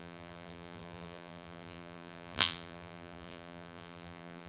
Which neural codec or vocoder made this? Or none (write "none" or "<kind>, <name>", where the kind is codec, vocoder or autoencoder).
vocoder, BigVGAN v2